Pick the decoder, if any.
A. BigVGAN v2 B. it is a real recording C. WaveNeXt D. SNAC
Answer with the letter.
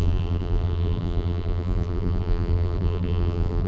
A